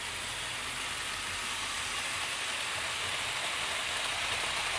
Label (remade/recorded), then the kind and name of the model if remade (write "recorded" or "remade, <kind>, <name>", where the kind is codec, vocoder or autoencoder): recorded